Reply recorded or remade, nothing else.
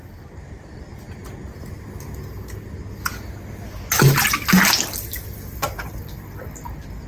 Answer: recorded